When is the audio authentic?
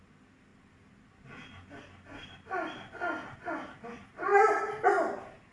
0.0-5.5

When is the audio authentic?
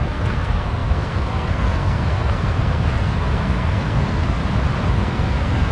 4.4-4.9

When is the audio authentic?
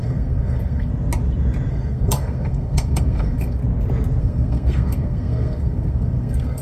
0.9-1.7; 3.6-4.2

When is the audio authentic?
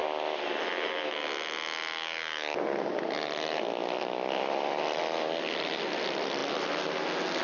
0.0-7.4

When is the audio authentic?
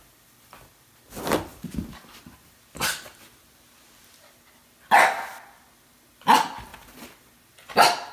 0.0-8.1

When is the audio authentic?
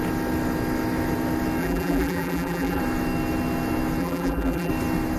0.0-1.6; 2.8-4.0; 4.7-5.2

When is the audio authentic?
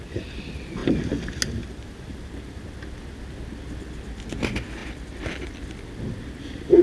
0.0-6.8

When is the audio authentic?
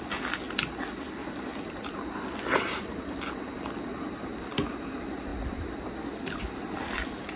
0.0-7.4